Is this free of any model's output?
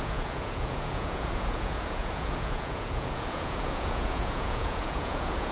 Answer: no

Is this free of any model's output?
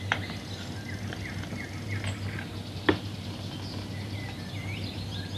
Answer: yes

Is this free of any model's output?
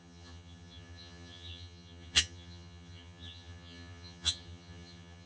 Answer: no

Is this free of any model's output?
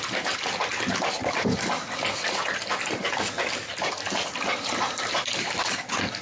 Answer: yes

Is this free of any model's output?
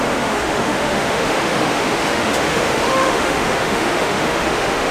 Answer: no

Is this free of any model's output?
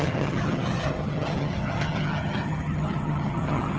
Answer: no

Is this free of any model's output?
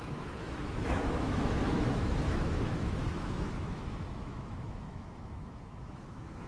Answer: no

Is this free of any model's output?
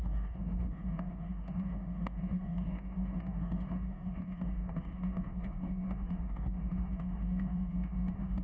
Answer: no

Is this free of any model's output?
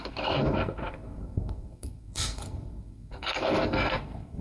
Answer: no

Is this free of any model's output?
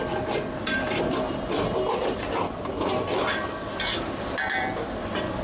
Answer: no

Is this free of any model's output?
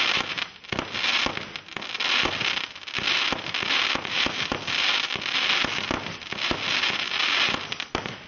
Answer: yes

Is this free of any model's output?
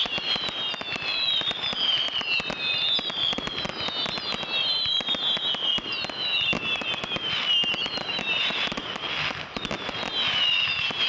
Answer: yes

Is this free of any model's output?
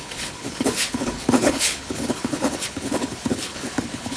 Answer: no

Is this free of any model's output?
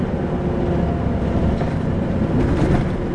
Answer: yes